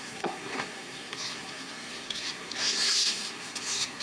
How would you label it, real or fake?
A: fake